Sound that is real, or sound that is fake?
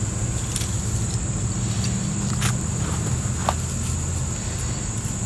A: real